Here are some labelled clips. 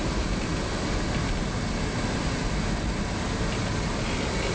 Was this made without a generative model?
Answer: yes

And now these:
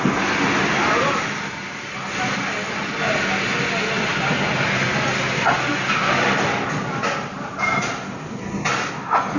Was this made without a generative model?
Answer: yes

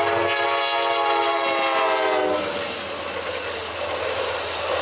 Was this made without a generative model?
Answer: yes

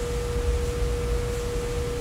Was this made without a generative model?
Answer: yes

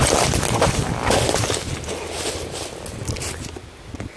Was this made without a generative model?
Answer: yes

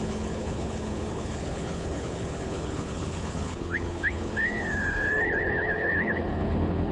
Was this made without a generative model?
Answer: no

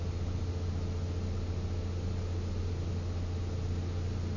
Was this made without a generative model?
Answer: yes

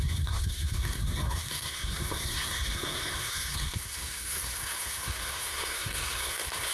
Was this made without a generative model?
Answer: no